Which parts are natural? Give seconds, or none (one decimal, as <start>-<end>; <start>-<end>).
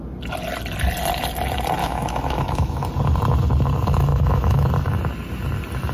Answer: 0.0-1.8; 2.9-4.1; 4.7-5.9